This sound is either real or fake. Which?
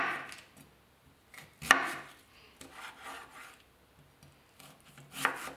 real